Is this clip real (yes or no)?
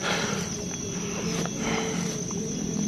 yes